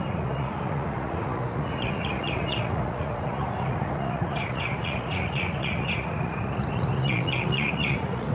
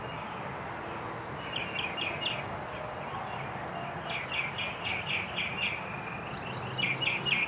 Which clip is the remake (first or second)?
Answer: first